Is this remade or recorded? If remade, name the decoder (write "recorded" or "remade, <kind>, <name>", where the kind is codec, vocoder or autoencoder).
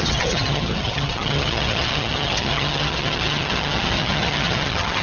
remade, vocoder, HiFi-GAN